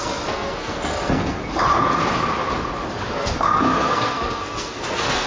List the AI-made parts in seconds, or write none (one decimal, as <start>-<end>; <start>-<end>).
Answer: 0.0-1.4; 3.1-5.3